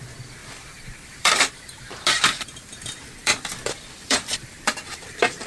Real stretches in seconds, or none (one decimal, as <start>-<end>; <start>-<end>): 0.0-0.4; 1.5-2.1